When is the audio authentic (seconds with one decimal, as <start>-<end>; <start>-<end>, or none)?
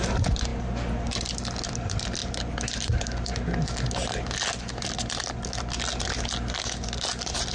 0.0-7.5